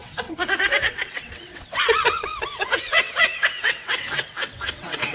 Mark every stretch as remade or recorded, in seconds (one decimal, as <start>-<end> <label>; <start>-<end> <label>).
0.0-5.1 remade